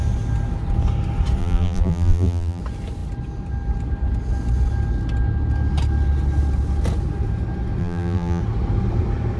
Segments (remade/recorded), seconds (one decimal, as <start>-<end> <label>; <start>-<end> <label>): 0.0-1.4 recorded; 1.4-2.6 remade; 2.6-7.8 recorded; 7.8-8.4 remade; 8.4-9.4 recorded